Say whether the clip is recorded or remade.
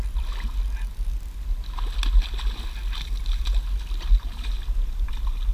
recorded